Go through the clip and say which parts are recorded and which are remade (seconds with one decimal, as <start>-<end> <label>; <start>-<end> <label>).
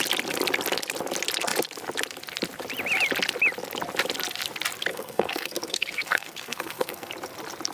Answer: 0.0-4.9 recorded; 4.9-7.1 remade; 7.1-7.7 recorded